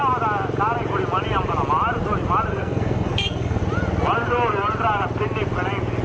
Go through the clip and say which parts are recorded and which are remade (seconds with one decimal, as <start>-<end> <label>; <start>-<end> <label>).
0.0-2.5 recorded; 2.5-3.6 remade; 3.6-6.0 recorded